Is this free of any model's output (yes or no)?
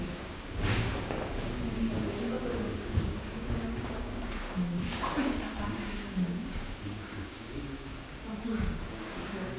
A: no